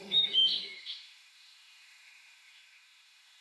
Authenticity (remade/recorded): remade